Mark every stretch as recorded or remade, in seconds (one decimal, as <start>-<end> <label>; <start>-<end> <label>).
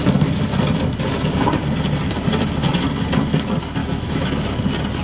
0.0-3.8 recorded; 3.8-4.5 remade; 4.5-5.0 recorded